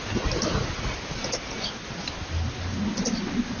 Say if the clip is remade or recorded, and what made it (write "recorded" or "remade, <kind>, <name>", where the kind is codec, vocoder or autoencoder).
recorded